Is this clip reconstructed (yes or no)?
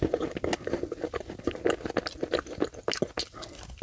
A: no